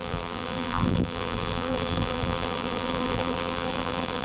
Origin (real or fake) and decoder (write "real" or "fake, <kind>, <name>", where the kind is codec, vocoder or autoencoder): fake, vocoder, BigVGAN v2